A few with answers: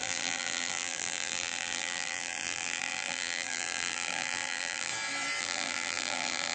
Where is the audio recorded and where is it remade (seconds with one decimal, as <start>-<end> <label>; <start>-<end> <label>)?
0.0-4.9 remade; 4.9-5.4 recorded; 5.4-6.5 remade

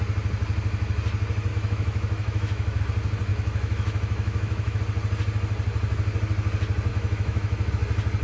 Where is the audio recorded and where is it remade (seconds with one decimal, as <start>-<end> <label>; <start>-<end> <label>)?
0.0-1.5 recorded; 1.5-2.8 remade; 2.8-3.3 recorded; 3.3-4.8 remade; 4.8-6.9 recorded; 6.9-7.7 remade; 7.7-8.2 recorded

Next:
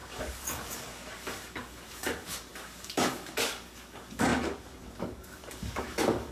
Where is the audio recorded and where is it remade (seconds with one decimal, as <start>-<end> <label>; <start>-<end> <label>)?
0.0-6.3 remade